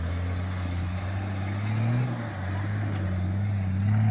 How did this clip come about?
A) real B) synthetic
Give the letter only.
A